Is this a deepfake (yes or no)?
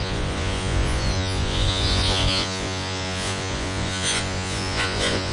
yes